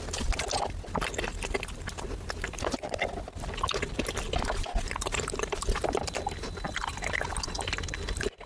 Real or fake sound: real